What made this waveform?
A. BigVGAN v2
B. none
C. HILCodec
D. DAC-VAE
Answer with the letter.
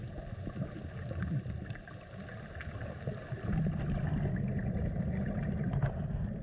B